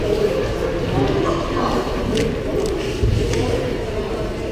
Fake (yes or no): no